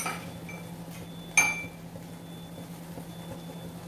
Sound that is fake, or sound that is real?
real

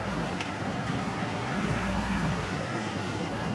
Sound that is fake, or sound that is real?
fake